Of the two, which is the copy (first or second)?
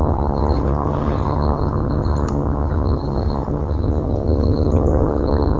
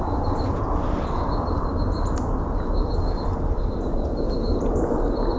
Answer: first